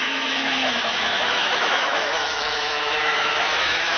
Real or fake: fake